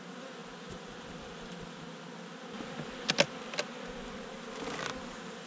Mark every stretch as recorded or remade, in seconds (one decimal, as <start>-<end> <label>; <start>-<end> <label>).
0.0-5.5 recorded